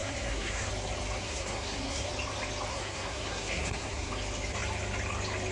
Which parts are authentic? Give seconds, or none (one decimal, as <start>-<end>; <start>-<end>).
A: 0.7-1.2; 2.1-2.7; 4.1-5.5